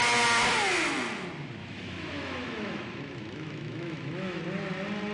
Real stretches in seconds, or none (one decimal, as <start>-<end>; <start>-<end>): 0.0-1.6; 4.4-5.1